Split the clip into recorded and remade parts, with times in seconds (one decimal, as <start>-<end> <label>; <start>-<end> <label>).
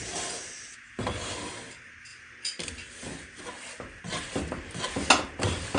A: 0.0-5.8 recorded